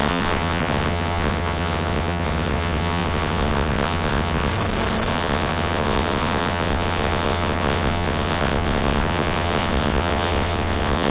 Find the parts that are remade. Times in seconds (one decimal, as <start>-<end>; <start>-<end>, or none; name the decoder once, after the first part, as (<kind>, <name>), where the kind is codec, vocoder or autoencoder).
0.0-4.5 (vocoder, WaveNeXt); 5.1-11.1